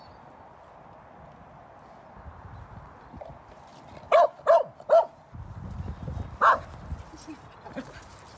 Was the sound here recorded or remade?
recorded